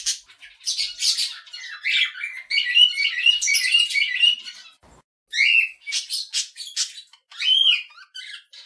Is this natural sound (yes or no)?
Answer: yes